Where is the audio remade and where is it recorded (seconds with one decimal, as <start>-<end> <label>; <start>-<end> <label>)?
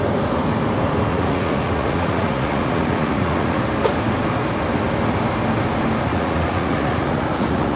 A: 0.0-1.1 recorded; 1.1-3.6 remade; 3.6-6.1 recorded; 6.1-7.8 remade